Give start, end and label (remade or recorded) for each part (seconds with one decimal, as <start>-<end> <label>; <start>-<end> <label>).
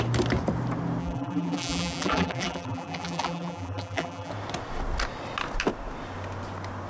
0.0-1.0 recorded; 1.0-4.3 remade; 4.3-6.9 recorded